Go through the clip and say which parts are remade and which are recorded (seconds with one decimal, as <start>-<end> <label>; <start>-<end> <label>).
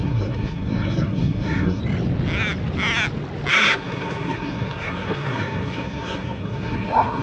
0.0-1.8 remade; 1.8-3.5 recorded; 3.5-7.2 remade